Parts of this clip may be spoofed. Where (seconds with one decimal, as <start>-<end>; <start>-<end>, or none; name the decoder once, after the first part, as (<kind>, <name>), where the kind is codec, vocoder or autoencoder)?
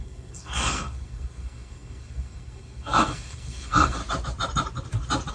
0.0-4.0 (codec, SNAC)